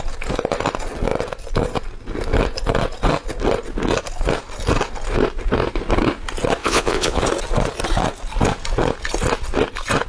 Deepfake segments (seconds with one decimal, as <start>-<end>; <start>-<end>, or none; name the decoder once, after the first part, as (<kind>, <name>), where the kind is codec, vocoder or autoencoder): 6.6-7.2 (vocoder, Vocos)